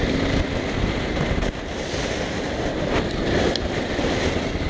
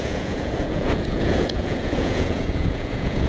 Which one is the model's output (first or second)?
second